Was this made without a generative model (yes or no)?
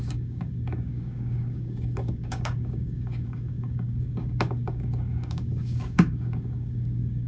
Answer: no